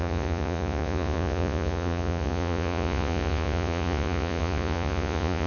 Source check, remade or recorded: remade